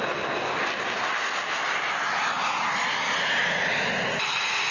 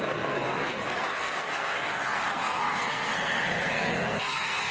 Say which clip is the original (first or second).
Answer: first